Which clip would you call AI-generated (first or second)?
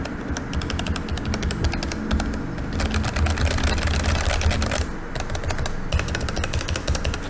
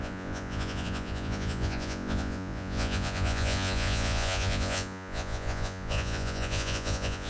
second